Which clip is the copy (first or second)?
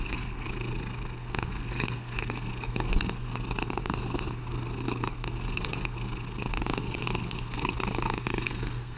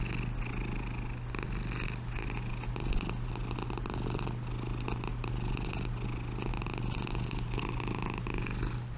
first